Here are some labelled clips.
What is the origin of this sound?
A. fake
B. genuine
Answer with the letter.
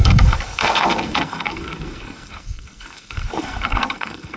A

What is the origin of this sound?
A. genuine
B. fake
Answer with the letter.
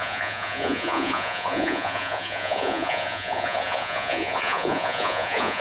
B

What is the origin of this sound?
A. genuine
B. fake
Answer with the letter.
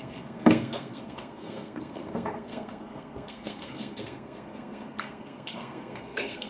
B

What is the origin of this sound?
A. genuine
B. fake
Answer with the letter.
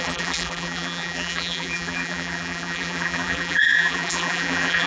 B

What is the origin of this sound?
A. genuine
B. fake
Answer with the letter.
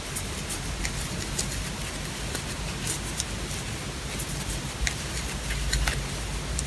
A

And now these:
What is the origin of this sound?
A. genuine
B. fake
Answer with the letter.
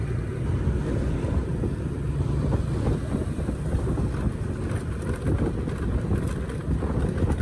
A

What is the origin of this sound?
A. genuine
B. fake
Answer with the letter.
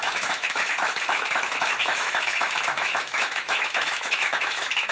B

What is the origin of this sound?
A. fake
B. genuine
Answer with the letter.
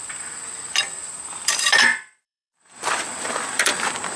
A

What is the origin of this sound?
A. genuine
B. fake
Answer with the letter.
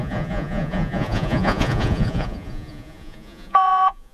B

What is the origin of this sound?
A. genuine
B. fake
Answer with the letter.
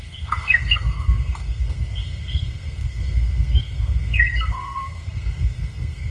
B